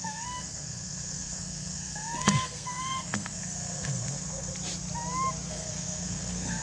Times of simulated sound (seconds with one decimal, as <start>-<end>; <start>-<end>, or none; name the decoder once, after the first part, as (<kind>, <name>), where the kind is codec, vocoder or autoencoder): 0.0-4.5 (codec, SNAC); 5.5-6.6